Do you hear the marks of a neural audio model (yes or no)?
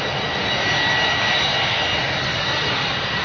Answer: no